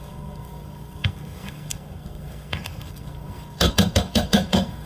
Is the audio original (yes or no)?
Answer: no